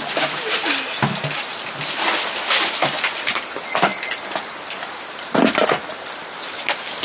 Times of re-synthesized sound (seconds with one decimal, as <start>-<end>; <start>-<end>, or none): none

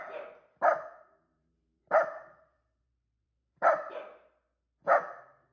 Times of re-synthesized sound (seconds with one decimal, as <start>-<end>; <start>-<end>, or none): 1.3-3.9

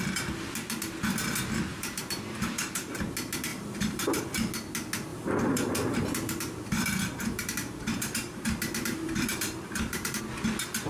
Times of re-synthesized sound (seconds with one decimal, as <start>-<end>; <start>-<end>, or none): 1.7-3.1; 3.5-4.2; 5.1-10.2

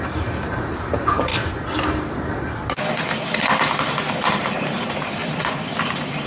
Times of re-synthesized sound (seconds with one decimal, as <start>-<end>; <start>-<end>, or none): 0.0-1.3; 4.3-5.2; 5.8-6.3